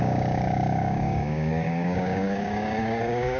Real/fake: fake